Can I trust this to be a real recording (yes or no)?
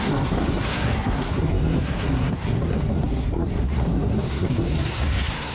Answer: no